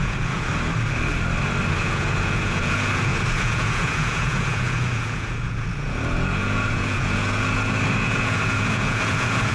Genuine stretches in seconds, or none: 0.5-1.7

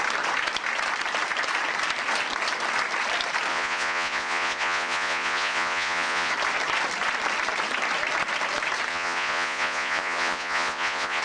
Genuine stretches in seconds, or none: 0.0-3.5; 6.3-8.9

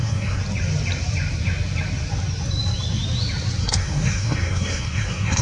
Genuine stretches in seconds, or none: 0.4-3.6

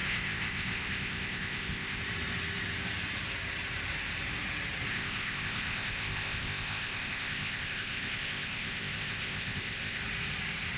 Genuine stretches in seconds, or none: 2.0-4.9; 10.0-10.8

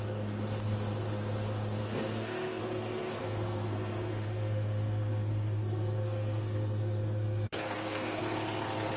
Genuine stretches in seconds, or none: 0.0-1.8; 2.6-3.2; 8.2-9.0